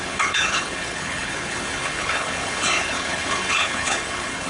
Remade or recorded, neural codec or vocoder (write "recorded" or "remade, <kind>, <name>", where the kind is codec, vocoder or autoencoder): remade, codec, HILCodec